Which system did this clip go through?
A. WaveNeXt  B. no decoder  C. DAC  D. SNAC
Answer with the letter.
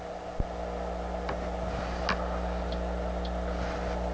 B